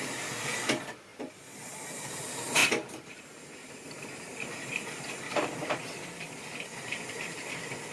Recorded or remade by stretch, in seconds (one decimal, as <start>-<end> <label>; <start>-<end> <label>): 0.0-2.6 recorded; 2.6-6.4 remade; 6.4-7.9 recorded